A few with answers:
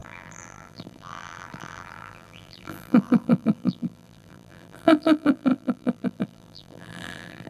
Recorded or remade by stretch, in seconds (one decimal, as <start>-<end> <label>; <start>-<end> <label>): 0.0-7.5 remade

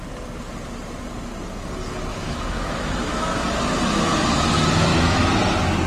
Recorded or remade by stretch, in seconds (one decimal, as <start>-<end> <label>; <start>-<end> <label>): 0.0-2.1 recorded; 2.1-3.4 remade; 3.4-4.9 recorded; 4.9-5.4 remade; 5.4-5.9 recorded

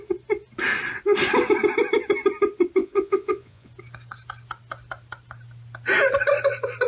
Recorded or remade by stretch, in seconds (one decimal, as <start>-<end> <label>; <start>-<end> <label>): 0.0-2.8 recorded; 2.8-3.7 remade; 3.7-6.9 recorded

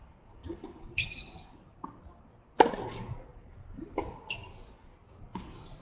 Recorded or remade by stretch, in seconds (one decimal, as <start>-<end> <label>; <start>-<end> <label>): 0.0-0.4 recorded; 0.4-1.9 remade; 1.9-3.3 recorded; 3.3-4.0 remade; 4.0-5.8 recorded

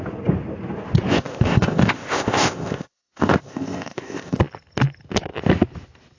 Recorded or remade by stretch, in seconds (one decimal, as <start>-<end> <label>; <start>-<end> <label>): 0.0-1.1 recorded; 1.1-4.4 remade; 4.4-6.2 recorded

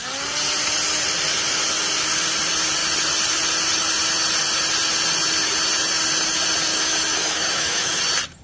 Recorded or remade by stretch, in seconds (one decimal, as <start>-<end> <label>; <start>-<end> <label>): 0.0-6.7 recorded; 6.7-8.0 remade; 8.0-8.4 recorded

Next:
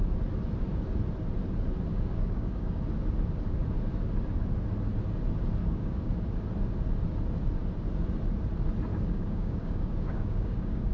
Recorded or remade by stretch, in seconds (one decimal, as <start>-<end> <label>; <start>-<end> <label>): 0.0-1.9 recorded; 1.9-2.8 remade; 2.8-5.6 recorded; 5.6-6.1 remade; 6.1-8.9 recorded; 8.9-10.9 remade

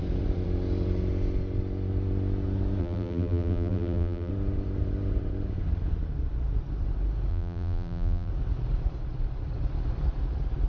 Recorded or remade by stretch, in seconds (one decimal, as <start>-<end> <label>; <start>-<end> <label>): 0.0-2.8 recorded; 2.8-4.3 remade; 4.3-7.3 recorded; 7.3-8.3 remade; 8.3-10.7 recorded